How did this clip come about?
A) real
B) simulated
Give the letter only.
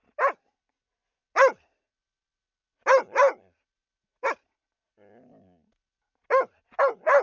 A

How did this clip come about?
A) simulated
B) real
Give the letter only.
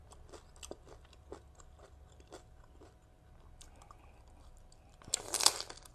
B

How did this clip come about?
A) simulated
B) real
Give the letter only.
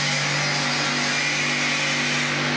B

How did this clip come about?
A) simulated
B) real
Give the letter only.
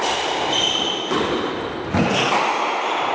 B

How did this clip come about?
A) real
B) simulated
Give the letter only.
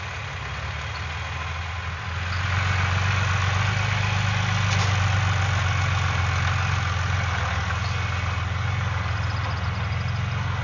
A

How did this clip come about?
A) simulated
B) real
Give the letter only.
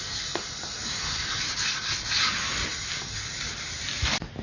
B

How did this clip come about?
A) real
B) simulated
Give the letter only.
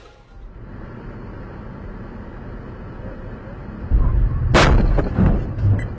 A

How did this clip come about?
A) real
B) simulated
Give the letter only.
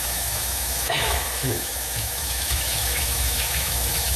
B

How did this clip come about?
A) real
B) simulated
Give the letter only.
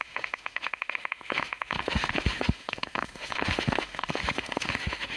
B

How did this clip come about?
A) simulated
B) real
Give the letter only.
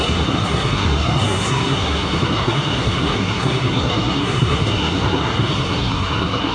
A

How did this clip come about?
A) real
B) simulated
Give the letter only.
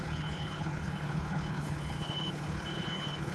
B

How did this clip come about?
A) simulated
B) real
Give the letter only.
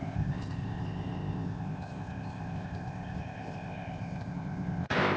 A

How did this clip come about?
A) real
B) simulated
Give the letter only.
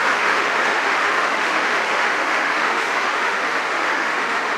B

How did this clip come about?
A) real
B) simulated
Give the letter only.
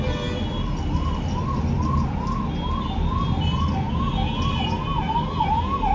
A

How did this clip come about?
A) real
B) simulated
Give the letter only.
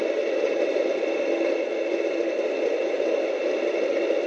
A